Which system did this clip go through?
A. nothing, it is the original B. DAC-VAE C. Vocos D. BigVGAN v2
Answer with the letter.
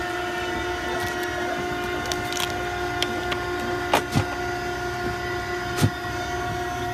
A